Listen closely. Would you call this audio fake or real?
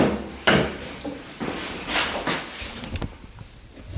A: fake